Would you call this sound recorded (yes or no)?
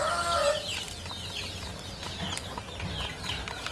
yes